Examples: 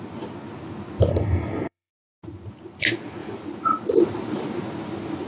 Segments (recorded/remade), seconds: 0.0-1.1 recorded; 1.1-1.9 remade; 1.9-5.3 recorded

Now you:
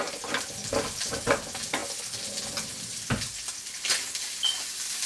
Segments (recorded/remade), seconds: 0.0-5.1 recorded

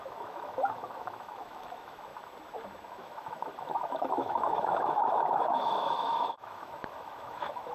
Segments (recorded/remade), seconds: 0.0-2.1 remade; 2.1-2.9 recorded; 2.9-7.7 remade

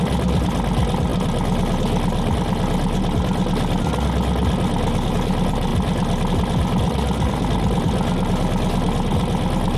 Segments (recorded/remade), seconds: 0.0-9.8 recorded